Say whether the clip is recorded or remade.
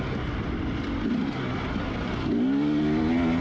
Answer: recorded